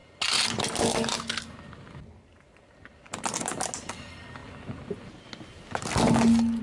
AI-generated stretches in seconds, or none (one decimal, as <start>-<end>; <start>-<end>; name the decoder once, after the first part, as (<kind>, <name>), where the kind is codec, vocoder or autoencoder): none